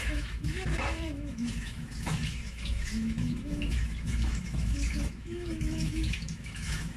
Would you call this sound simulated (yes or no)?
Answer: yes